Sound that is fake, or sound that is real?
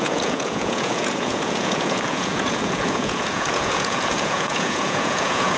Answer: fake